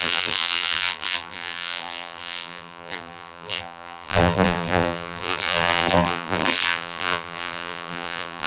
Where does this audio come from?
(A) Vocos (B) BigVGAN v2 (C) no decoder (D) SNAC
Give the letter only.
B